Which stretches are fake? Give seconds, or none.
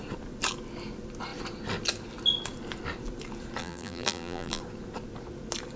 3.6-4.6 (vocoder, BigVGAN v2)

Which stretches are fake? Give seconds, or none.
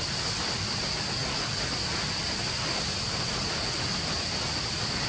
none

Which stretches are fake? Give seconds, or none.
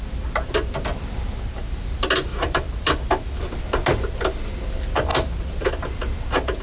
2.3-3.6 (vocoder, BigVGAN v2)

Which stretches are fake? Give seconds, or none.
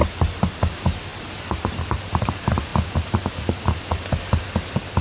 0.7-2.7 (vocoder, BigVGAN v2)